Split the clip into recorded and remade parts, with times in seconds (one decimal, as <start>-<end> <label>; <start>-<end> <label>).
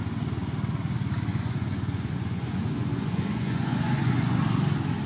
0.0-1.3 recorded; 1.3-4.4 remade; 4.4-5.1 recorded